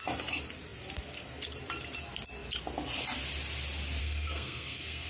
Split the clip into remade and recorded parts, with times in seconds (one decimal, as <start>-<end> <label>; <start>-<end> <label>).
0.0-4.0 recorded; 4.0-5.1 remade